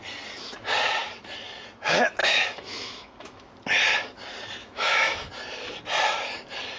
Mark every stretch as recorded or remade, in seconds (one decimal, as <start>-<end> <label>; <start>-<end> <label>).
0.0-2.2 recorded; 2.2-3.5 remade; 3.5-4.6 recorded; 4.6-5.3 remade; 5.3-6.8 recorded